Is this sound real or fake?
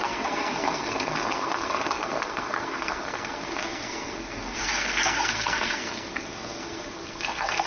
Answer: fake